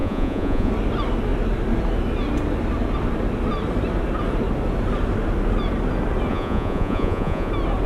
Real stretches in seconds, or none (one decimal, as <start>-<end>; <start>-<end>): 0.7-6.3; 7.5-7.9